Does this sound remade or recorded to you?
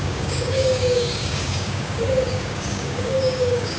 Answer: remade